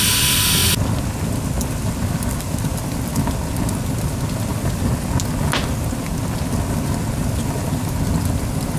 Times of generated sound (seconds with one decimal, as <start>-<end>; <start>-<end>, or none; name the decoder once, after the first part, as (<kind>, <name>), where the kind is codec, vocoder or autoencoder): none

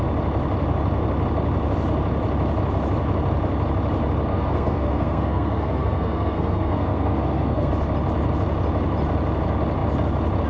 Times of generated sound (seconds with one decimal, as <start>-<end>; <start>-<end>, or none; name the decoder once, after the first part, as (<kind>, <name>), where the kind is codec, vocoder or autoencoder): 4.3-7.7 (codec, SNAC)

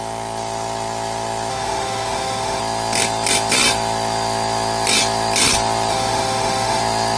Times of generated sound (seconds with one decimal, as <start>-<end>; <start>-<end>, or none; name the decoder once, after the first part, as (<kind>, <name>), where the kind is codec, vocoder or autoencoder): 1.5-2.6 (autoencoder, DAC-VAE); 5.9-6.8

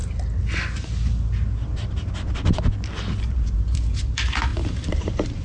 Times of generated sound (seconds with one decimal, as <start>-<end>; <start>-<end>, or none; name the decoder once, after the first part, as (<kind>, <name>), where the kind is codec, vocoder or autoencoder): 3.2-5.4 (vocoder, BigVGAN v2)

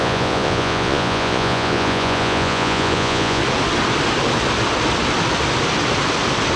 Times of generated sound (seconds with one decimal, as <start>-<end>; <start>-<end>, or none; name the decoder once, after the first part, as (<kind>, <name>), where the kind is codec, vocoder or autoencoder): 0.0-3.4 (vocoder, Vocos)

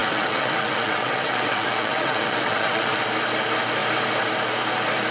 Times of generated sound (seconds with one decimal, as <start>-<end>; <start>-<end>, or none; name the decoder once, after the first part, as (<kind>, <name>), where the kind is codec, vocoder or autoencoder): 0.0-3.0 (vocoder, WaveNeXt)

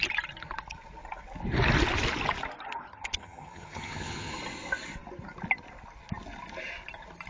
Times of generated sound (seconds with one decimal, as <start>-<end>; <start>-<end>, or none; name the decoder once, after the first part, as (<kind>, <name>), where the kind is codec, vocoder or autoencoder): 2.9-4.3 (vocoder, HiFi-GAN)

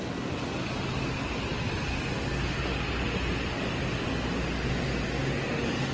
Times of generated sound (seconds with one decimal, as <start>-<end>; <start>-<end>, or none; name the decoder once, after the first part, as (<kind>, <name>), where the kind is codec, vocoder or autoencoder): none